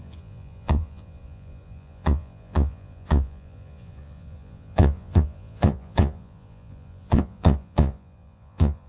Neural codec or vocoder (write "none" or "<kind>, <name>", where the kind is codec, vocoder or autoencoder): vocoder, Vocos